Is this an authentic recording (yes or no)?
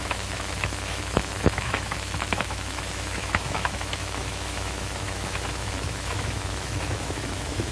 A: no